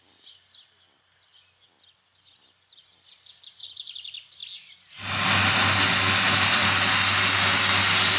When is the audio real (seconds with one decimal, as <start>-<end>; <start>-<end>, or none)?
0.0-8.2